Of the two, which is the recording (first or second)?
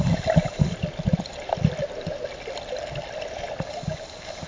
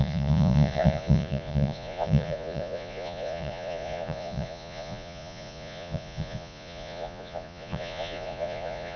first